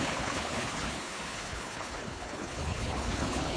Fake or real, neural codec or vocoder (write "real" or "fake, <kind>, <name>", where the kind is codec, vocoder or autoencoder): fake, codec, HILCodec